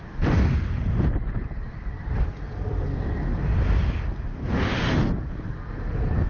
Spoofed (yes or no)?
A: no